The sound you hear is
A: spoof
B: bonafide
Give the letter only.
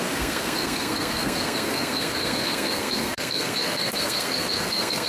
A